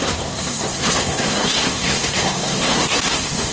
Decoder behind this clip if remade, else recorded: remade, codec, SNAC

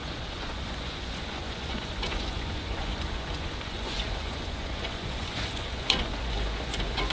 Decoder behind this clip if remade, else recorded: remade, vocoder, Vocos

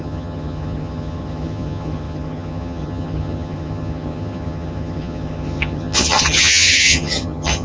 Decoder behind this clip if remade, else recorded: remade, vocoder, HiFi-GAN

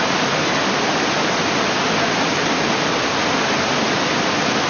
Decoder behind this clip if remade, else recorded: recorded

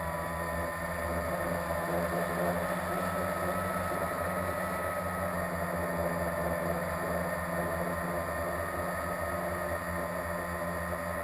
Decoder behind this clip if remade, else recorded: recorded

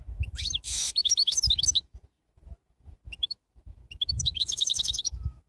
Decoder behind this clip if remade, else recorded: remade, autoencoder, DAC-VAE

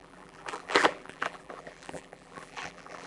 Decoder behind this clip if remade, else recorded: remade, vocoder, BigVGAN v2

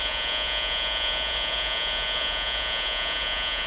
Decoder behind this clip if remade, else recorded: remade, vocoder, Vocos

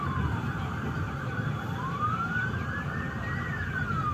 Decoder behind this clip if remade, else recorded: remade, vocoder, BigVGAN v2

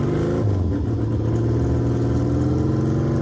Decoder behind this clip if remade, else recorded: recorded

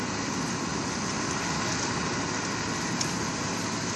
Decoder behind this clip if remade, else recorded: recorded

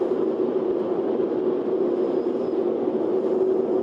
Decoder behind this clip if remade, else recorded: recorded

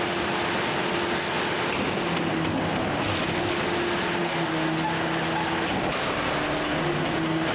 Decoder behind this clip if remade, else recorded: recorded